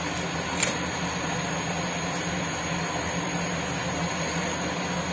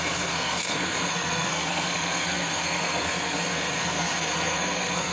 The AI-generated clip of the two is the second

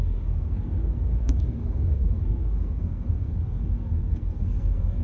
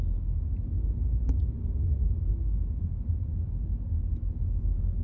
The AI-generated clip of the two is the first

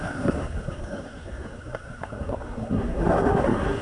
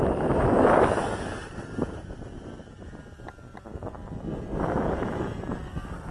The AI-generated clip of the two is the first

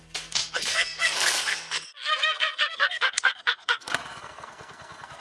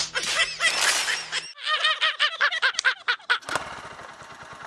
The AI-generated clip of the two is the first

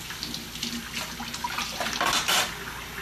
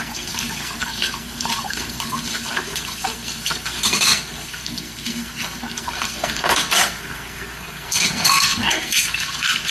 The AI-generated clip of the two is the second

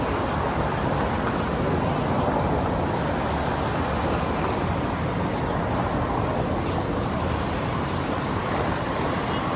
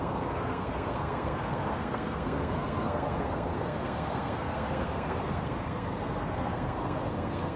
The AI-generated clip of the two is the second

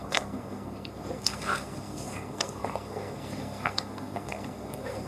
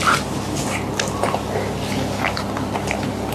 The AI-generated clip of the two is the first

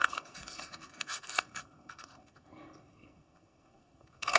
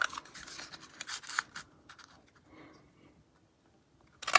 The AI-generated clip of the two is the first